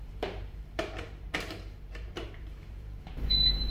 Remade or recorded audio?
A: remade